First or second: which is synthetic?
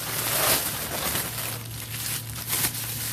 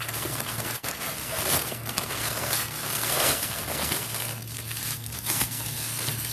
second